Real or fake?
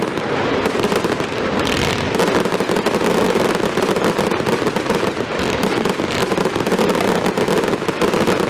real